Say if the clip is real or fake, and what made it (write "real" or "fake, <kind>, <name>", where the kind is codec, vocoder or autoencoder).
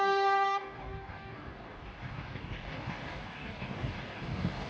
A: fake, codec, DAC